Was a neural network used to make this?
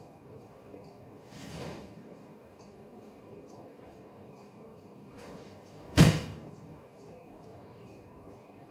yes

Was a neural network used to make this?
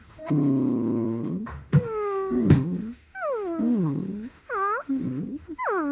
yes